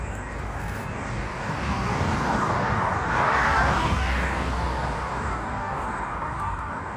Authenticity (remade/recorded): remade